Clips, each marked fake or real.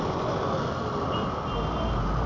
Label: real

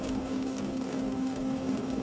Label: fake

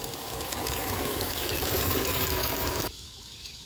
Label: fake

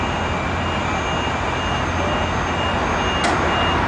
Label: real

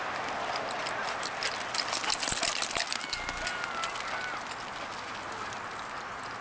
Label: real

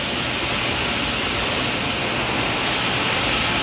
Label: real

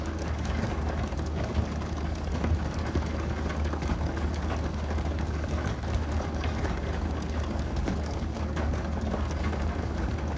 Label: fake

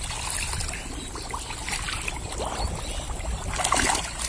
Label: real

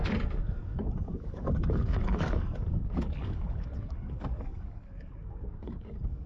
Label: fake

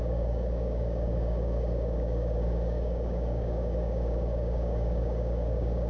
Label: fake